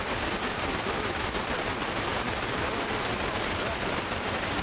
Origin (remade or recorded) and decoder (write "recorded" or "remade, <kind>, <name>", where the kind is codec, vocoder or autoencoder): recorded